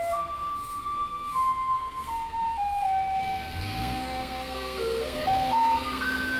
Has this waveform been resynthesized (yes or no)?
yes